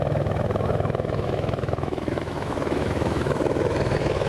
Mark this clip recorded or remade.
remade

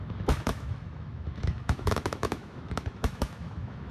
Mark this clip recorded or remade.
remade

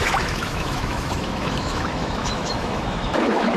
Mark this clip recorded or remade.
remade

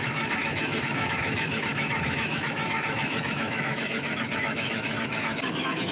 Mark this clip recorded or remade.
remade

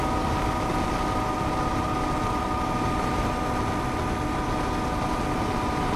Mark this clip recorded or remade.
recorded